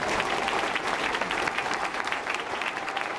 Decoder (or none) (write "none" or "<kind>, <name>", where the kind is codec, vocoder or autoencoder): vocoder, BigVGAN v2